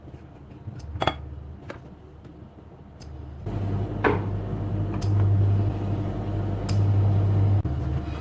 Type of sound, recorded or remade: recorded